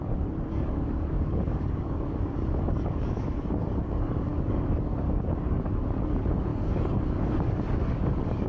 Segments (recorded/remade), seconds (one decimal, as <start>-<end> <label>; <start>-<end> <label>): 0.0-8.5 remade